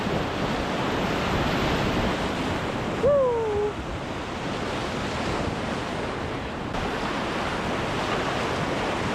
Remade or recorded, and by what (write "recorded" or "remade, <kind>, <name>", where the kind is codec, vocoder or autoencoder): recorded